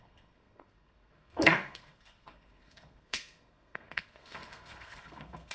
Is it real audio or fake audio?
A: fake